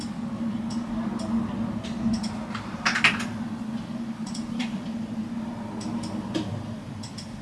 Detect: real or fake real